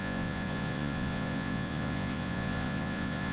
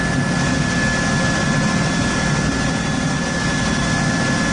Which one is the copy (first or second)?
first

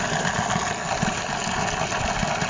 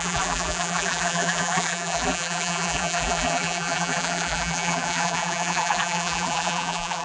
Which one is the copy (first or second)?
second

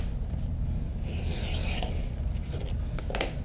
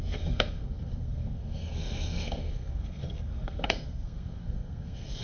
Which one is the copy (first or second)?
second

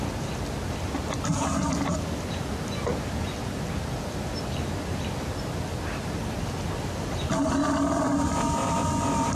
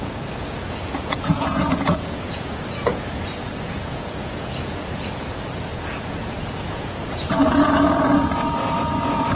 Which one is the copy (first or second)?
second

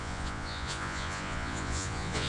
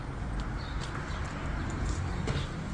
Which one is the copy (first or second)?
first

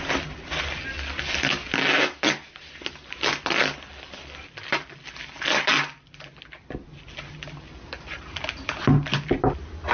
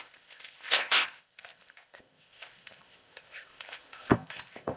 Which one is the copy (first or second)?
second